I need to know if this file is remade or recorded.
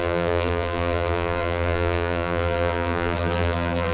remade